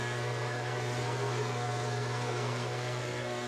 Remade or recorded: remade